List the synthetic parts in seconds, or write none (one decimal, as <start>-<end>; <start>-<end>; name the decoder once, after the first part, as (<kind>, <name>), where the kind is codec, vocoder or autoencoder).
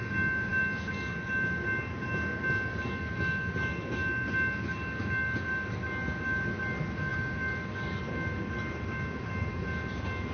none